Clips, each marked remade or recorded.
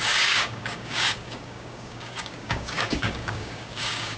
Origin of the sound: remade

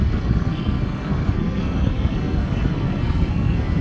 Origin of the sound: remade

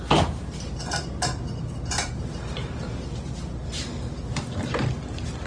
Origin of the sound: recorded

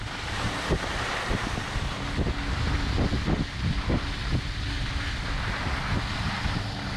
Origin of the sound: recorded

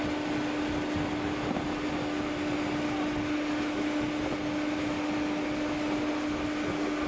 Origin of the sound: recorded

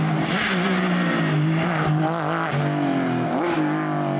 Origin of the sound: recorded